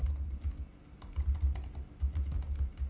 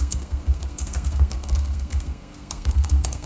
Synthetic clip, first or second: second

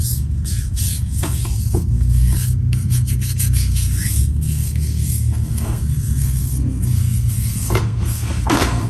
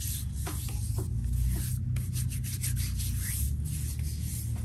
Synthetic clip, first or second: first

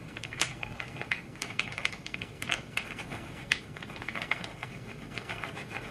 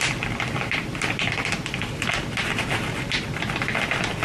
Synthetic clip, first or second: first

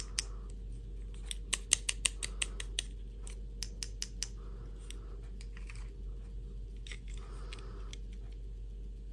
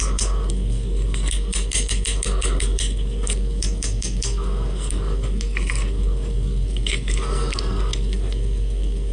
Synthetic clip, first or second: second